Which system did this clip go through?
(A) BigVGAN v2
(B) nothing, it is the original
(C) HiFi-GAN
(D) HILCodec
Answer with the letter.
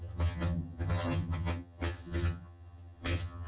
C